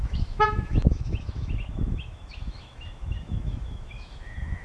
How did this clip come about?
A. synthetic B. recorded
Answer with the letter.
A